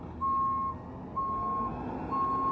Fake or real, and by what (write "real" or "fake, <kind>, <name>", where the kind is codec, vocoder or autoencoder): real